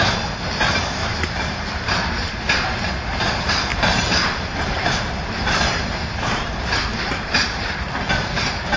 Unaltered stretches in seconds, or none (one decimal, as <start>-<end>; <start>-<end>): 0.0-1.0; 2.9-3.7; 7.7-8.8